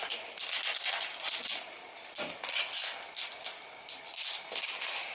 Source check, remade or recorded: recorded